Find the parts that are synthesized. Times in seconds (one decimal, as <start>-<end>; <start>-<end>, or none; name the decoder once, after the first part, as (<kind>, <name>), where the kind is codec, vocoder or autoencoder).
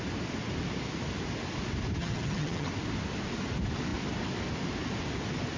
2.0-2.7 (vocoder, HiFi-GAN)